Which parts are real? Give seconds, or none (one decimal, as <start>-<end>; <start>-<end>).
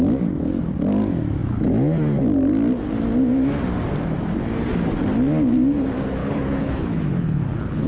0.0-6.2